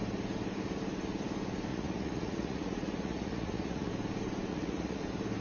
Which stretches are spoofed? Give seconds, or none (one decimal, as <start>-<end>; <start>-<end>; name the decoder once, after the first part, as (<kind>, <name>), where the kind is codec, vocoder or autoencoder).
1.7-3.9 (vocoder, Vocos); 4.5-5.0

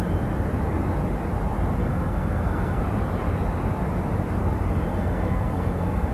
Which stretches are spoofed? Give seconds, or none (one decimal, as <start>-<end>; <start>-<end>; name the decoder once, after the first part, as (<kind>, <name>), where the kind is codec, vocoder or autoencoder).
1.8-2.8 (codec, SNAC); 4.9-6.1

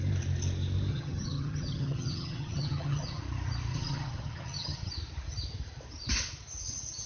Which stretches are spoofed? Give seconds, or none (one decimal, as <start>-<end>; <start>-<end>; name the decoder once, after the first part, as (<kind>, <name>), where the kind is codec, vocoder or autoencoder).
0.9-3.2 (vocoder, HiFi-GAN); 3.7-4.9

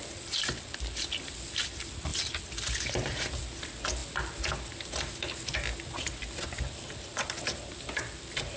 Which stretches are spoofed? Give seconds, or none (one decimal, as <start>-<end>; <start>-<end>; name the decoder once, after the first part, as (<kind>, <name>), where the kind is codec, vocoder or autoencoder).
none